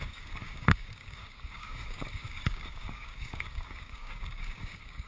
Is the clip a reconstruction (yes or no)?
yes